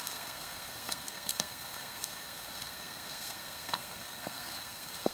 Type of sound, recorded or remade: remade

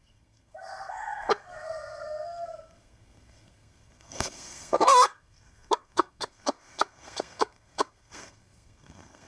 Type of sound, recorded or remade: remade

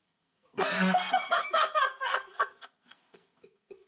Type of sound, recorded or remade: remade